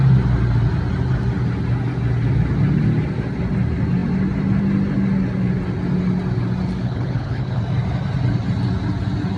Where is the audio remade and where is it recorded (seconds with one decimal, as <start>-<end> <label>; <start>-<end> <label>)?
0.0-6.8 recorded; 6.8-7.6 remade; 7.6-9.4 recorded